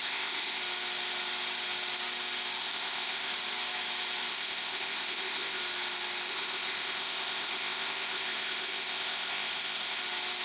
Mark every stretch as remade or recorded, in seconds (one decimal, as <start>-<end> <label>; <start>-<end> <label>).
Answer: 0.0-0.6 remade; 0.6-2.6 recorded; 2.6-3.3 remade; 3.3-4.3 recorded; 4.3-5.6 remade; 5.6-6.3 recorded; 6.3-10.0 remade; 10.0-10.4 recorded